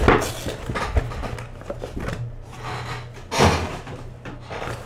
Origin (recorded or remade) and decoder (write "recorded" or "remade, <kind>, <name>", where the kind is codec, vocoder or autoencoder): recorded